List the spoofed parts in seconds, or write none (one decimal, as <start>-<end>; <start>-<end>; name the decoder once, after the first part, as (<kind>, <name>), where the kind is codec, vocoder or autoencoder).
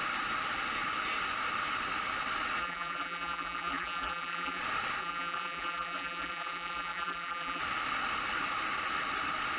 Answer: 2.6-4.6 (vocoder, BigVGAN v2); 5.0-7.6